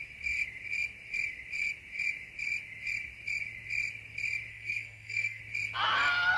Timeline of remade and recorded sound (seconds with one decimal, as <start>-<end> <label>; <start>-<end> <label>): 0.0-4.5 recorded; 4.5-5.4 remade; 5.4-6.4 recorded